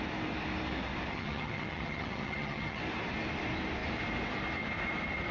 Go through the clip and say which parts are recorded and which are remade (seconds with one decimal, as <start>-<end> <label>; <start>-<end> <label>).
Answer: 0.0-1.1 recorded; 1.1-2.8 remade; 2.8-5.3 recorded